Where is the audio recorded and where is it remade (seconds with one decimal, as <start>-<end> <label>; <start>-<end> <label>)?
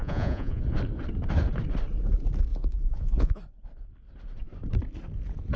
0.0-0.6 remade; 0.6-2.5 recorded; 2.5-3.4 remade; 3.4-5.6 recorded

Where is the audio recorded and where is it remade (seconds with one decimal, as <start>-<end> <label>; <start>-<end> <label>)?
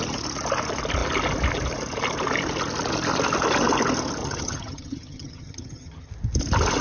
0.0-4.2 recorded; 4.2-6.1 remade; 6.1-6.8 recorded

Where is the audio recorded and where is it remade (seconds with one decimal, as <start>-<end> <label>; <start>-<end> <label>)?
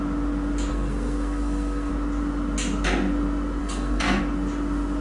0.0-0.7 recorded; 0.7-1.9 remade; 1.9-3.6 recorded; 3.6-4.2 remade; 4.2-5.0 recorded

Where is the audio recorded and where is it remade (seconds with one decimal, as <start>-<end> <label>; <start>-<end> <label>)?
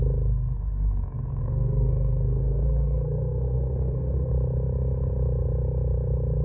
0.0-1.4 recorded; 1.4-4.3 remade; 4.3-6.4 recorded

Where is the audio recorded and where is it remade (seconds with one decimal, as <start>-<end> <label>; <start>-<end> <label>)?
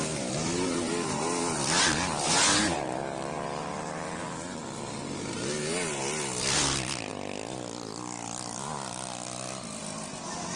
0.0-10.6 recorded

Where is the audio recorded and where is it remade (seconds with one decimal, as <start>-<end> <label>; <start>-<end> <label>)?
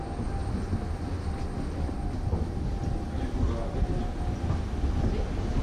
0.0-5.6 recorded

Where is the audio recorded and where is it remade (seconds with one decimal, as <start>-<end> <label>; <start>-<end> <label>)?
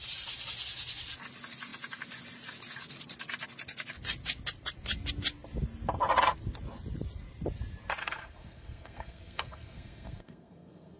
0.0-8.0 recorded; 8.0-11.0 remade